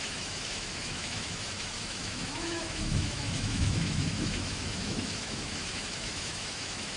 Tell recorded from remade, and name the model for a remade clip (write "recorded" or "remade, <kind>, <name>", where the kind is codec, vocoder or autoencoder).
remade, autoencoder, DAC-VAE